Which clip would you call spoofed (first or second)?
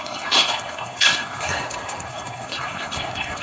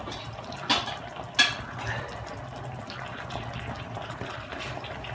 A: first